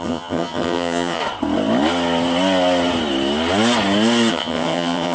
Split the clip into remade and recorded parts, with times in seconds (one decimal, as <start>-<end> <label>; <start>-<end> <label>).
0.0-1.2 remade; 1.2-4.3 recorded; 4.3-5.1 remade

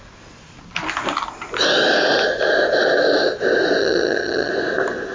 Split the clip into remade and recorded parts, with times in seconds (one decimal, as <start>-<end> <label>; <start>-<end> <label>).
0.0-3.8 recorded; 3.8-4.5 remade; 4.5-5.1 recorded

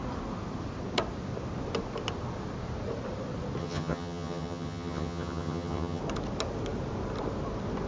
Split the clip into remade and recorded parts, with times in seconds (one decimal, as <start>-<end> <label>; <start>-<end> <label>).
0.0-3.6 recorded; 3.6-6.0 remade; 6.0-7.9 recorded

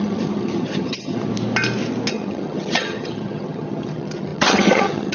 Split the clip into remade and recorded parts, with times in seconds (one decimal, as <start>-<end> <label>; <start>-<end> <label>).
0.0-1.3 remade; 1.3-2.1 recorded; 2.1-5.1 remade